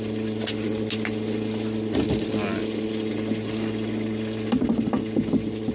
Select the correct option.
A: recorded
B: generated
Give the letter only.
A